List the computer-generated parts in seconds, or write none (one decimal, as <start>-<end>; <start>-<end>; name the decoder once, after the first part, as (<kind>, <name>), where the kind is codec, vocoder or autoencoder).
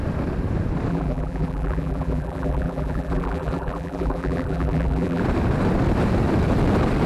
0.9-5.2 (vocoder, BigVGAN v2)